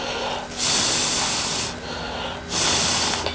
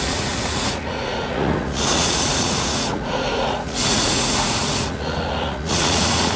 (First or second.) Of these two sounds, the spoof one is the second